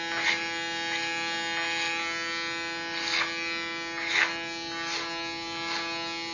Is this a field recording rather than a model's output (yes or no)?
yes